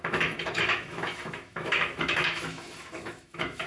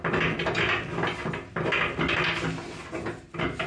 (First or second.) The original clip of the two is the second